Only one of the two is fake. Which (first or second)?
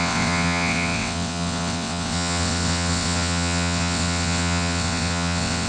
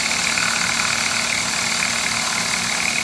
first